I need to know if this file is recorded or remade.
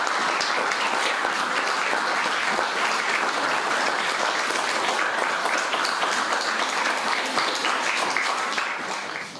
recorded